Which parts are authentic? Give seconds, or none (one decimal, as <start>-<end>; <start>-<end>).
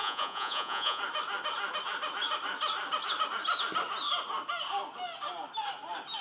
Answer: 1.0-6.2